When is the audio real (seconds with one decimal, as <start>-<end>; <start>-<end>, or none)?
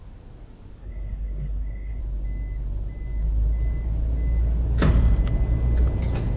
0.0-0.8; 2.0-6.4